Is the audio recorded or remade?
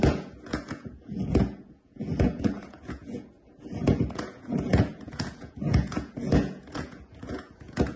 remade